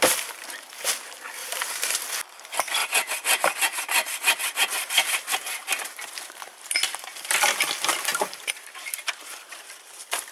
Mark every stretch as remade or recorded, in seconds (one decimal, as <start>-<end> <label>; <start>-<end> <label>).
0.0-1.4 recorded; 1.4-2.1 remade; 2.1-2.8 recorded; 2.8-7.4 remade; 7.4-8.1 recorded; 8.1-9.7 remade; 9.7-10.3 recorded